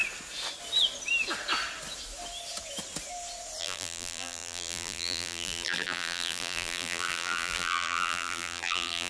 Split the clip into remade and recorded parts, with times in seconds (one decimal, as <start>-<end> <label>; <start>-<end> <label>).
0.0-3.6 recorded; 3.6-9.1 remade